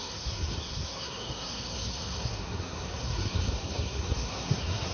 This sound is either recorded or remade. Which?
remade